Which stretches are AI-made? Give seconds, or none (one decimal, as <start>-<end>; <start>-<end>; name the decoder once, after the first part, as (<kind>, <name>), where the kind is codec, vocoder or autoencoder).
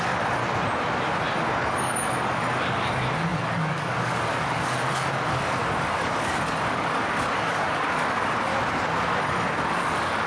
0.0-0.4 (codec, DAC); 1.3-8.5; 9.2-10.3